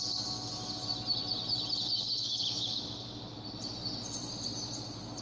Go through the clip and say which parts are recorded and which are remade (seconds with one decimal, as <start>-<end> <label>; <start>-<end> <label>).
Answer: 0.0-5.2 recorded